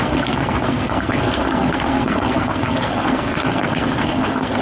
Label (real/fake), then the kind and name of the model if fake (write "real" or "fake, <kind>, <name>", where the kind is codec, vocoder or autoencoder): fake, codec, SNAC